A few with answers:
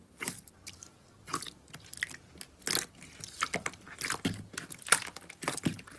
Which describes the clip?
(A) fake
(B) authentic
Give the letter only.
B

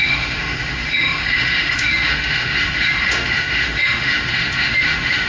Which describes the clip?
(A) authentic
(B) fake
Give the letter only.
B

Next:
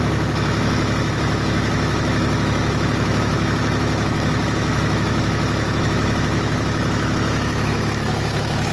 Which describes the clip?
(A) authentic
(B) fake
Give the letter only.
B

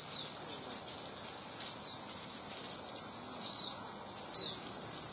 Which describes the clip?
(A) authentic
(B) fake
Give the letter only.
A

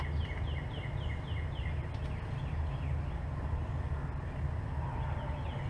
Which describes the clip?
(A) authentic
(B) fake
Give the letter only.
A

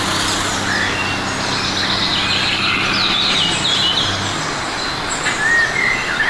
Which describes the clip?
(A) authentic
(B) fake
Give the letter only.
A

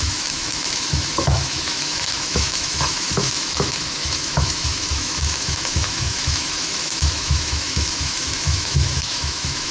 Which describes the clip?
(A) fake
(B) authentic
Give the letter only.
A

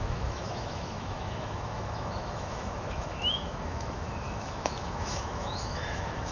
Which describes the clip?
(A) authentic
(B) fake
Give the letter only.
B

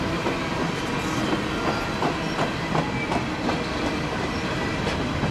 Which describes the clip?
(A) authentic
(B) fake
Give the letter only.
A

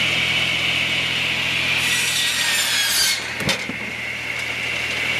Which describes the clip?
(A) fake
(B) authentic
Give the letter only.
B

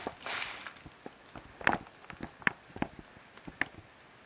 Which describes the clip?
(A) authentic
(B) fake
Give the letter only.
A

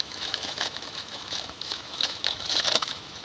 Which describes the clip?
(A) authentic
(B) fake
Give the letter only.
B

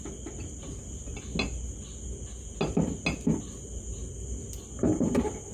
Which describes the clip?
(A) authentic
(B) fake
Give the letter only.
A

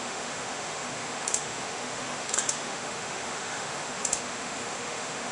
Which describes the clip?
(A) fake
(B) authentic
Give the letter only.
A